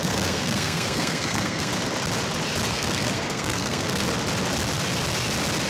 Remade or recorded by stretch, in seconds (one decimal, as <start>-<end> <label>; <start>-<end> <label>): 0.0-1.7 remade; 1.7-2.7 recorded; 2.7-4.1 remade; 4.1-5.7 recorded